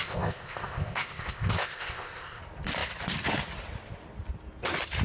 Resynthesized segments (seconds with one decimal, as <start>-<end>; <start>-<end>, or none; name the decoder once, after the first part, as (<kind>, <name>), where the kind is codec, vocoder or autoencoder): 0.0-2.4 (codec, ZipCodec)